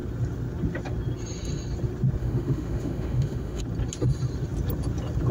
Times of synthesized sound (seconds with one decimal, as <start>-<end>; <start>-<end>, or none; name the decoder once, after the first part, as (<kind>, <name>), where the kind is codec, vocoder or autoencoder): 2.2-3.6 (autoencoder, DAC-VAE)